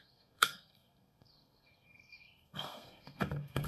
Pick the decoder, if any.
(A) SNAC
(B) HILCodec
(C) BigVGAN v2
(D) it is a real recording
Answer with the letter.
A